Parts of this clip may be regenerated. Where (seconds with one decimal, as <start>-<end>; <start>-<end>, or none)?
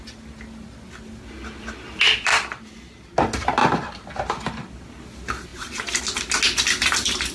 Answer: 5.5-6.0